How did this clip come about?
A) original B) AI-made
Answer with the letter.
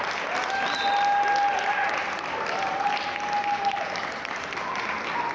A